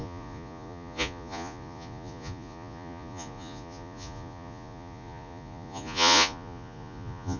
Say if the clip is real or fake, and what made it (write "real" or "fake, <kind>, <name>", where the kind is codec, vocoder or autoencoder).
fake, vocoder, Vocos